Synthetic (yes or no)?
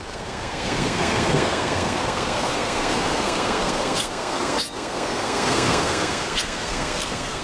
yes